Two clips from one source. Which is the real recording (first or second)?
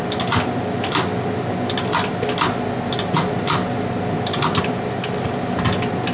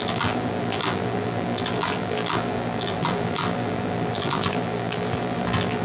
first